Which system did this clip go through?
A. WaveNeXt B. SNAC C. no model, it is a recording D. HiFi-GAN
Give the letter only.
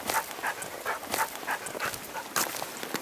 C